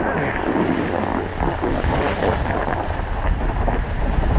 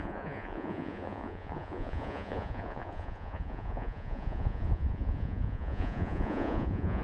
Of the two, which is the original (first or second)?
first